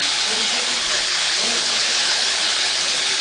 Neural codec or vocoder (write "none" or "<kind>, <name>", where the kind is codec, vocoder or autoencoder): codec, HILCodec